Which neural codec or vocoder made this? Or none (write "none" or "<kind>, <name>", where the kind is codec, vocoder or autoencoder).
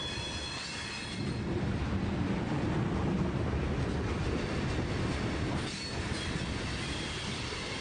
none